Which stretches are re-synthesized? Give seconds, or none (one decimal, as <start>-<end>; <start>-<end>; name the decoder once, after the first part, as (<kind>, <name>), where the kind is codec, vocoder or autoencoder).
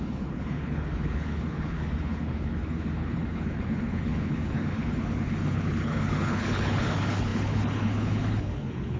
0.0-9.0 (codec, HILCodec)